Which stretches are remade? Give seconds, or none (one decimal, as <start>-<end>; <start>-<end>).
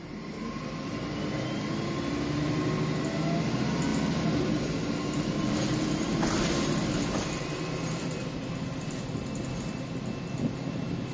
none